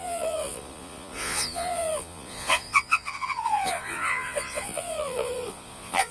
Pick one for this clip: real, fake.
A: fake